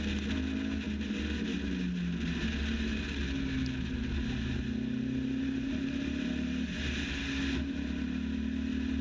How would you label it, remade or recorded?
recorded